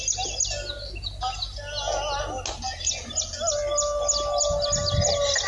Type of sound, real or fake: real